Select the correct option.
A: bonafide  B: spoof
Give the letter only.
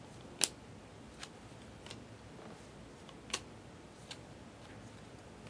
A